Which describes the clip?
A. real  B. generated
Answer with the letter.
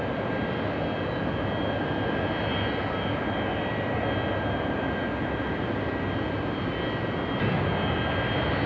A